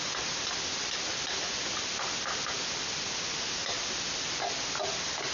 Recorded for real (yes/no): yes